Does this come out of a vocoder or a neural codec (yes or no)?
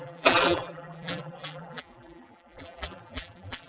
yes